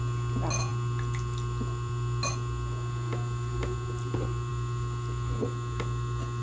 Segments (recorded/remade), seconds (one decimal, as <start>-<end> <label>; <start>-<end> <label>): 0.0-6.4 recorded